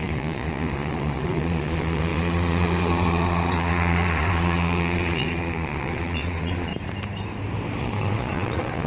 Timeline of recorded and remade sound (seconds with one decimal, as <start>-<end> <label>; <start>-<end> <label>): 0.0-6.7 remade; 6.7-7.8 recorded; 7.8-8.9 remade